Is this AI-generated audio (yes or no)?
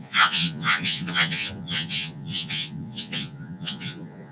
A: yes